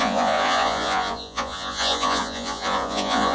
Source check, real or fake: fake